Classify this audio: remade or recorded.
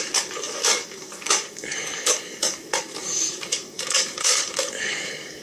remade